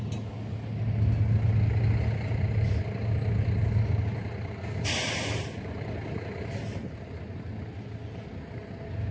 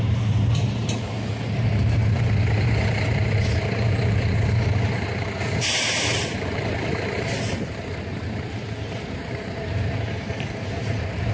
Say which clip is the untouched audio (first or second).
first